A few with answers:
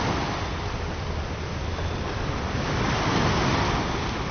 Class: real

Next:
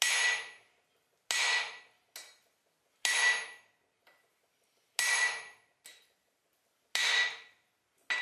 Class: real